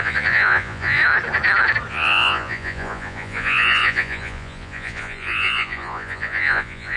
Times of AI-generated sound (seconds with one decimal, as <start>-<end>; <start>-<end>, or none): 0.0-1.0; 1.9-7.0